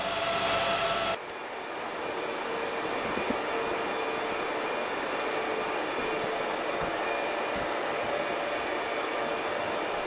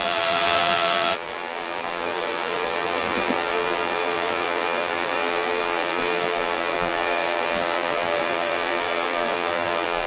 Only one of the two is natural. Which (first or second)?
first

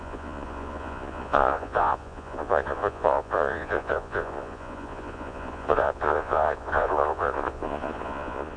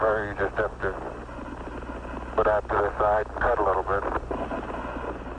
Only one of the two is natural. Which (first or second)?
second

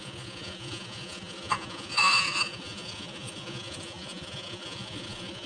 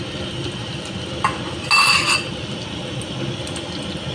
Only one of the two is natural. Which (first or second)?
second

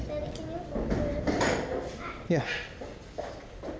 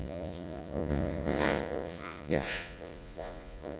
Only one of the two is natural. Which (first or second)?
first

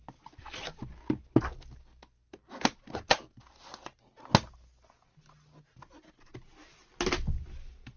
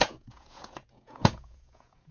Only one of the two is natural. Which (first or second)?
first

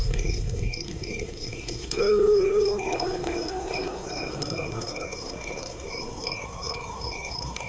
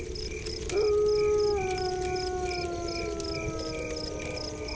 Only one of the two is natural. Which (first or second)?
second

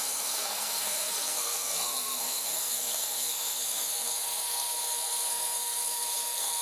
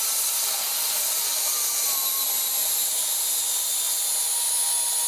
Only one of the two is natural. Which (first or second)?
second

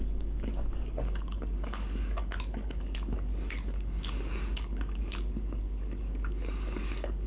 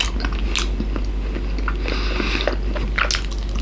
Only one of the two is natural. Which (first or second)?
second